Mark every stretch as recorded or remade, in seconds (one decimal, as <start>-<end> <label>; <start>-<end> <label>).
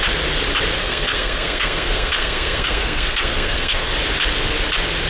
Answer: 0.0-0.8 recorded; 0.8-3.9 remade; 3.9-5.1 recorded